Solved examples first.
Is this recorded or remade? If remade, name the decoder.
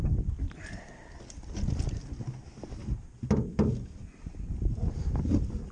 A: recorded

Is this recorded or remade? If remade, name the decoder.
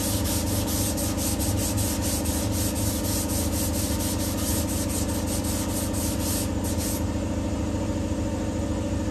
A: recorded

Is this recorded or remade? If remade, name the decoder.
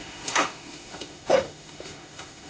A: remade, autoencoder, DAC-VAE